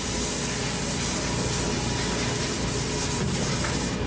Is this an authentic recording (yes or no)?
yes